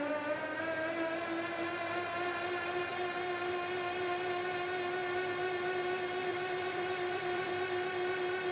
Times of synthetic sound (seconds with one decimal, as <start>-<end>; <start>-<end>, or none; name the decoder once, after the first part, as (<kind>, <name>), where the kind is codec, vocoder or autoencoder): 6.3-7.5 (vocoder, BigVGAN v2)